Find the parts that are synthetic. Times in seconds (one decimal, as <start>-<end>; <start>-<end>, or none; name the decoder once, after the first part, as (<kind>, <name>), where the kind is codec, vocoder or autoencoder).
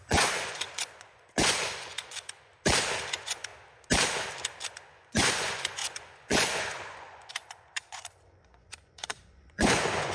0.0-2.5 (vocoder, Vocos); 3.1-3.5; 4.7-10.1